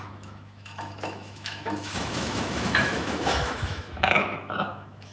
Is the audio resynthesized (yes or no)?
yes